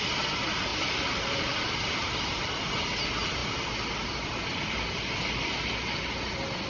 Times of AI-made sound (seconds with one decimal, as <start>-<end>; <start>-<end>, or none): 0.7-2.2